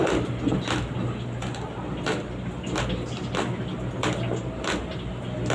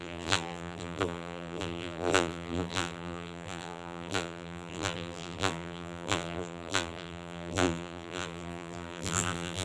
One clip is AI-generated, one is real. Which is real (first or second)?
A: first